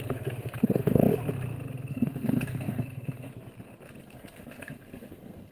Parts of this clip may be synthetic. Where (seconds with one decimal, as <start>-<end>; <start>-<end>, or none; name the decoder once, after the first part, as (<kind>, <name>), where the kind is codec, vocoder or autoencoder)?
0.0-1.0 (codec, SNAC); 1.9-3.3; 4.0-5.5